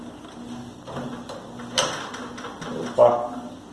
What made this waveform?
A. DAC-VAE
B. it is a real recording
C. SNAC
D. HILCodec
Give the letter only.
B